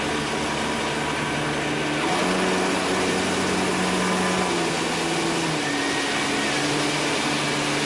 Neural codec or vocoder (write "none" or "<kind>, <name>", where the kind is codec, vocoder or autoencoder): none